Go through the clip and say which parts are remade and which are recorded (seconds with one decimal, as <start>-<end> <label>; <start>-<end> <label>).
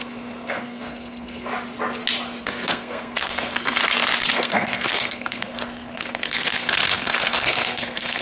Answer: 0.0-1.5 remade; 1.5-2.4 recorded; 2.4-3.8 remade; 3.8-4.3 recorded; 4.3-8.2 remade